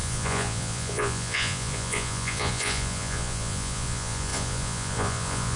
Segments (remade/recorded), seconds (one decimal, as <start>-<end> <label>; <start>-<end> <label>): 0.0-5.6 remade